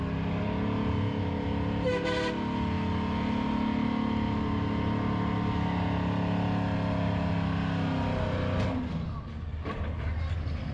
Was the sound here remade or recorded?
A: recorded